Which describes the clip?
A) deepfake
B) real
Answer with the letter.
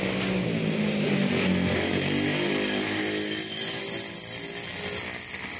B